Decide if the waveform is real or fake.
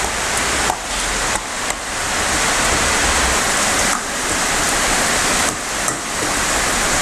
real